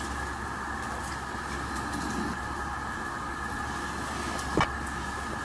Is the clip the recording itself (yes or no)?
yes